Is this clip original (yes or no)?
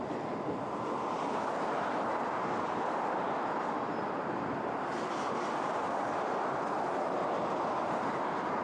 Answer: yes